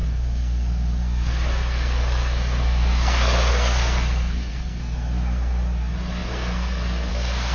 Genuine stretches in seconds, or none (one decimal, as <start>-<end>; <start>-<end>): none